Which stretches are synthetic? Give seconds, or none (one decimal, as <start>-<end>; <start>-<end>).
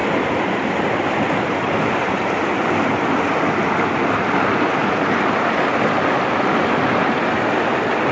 none